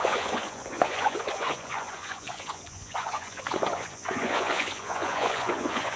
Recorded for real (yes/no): no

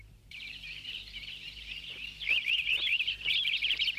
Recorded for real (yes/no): no